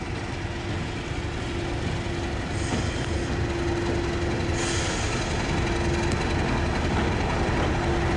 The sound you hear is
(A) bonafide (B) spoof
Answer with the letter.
A